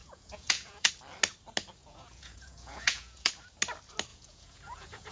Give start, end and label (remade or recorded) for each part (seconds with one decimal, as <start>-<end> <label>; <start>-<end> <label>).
0.0-0.9 remade; 0.9-1.8 recorded; 1.8-3.3 remade; 3.3-4.1 recorded; 4.1-5.1 remade